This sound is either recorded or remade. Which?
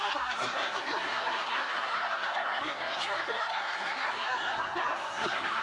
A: remade